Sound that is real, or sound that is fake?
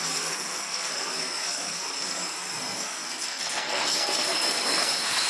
fake